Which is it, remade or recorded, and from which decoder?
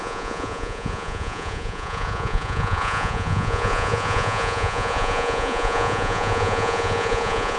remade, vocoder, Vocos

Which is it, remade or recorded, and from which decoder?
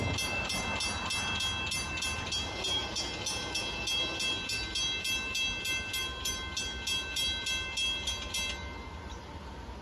recorded